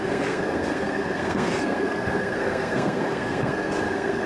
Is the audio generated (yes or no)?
yes